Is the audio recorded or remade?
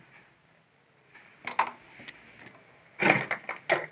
recorded